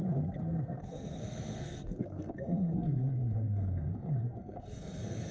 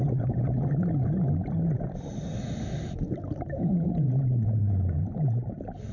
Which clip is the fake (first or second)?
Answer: first